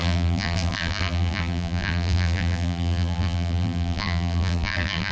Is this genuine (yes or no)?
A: no